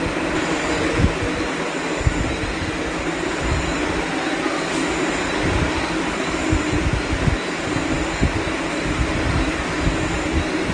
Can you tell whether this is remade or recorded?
recorded